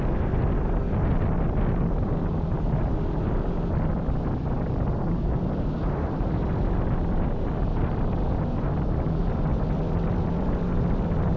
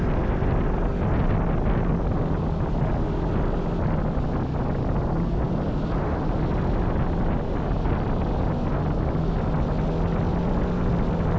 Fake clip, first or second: first